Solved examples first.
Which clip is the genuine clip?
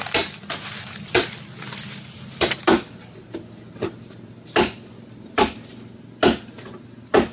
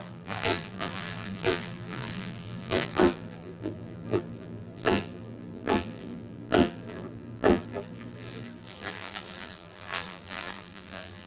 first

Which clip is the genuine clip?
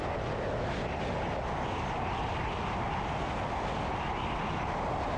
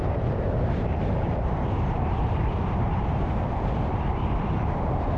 first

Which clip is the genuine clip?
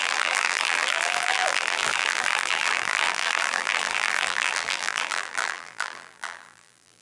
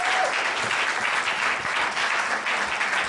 second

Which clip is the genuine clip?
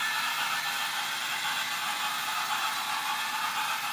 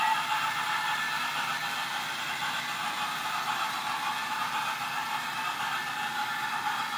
first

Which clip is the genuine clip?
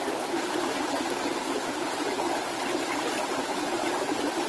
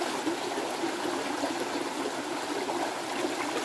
second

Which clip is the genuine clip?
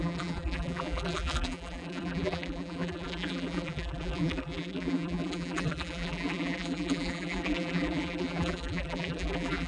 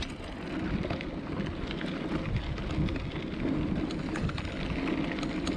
second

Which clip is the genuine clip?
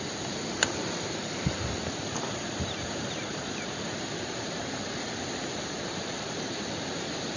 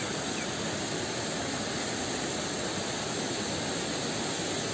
second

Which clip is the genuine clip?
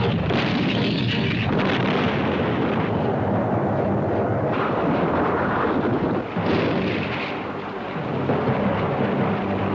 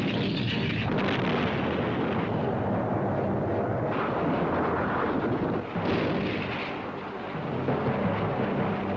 second